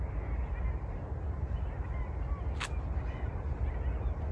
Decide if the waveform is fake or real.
real